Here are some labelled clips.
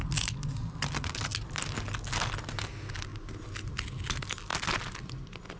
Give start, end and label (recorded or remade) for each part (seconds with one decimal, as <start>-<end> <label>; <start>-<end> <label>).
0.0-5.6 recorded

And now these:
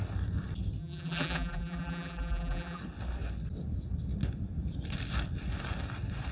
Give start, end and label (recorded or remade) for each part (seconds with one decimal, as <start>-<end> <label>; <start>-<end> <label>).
0.0-0.8 recorded; 0.8-2.8 remade; 2.8-6.3 recorded

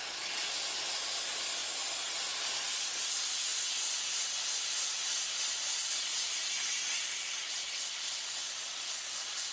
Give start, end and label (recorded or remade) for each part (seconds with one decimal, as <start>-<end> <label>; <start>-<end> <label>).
0.0-1.6 recorded; 1.6-3.1 remade; 3.1-9.5 recorded